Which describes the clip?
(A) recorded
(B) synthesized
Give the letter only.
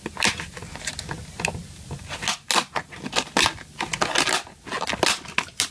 A